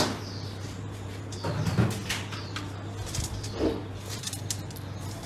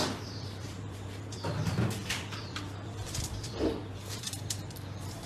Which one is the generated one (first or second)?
second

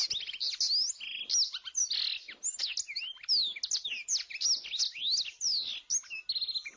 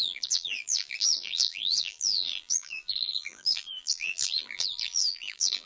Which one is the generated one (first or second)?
second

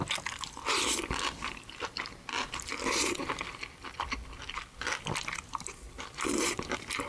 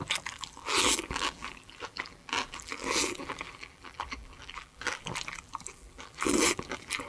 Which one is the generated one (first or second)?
second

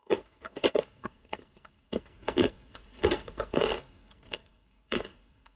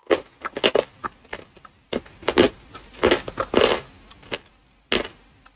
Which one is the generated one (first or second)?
first